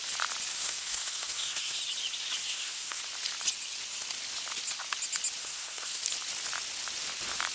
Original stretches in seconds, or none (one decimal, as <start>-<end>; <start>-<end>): 0.0-0.5; 1.8-2.4; 3.0-5.4; 6.0-7.5